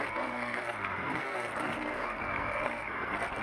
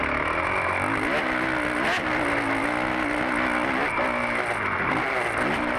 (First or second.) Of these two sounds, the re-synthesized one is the first